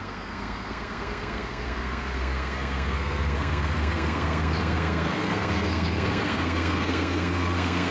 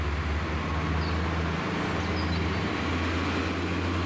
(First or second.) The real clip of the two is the second